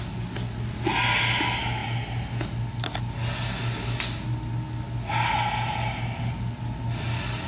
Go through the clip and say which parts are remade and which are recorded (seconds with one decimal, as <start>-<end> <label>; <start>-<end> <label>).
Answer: 0.0-7.5 recorded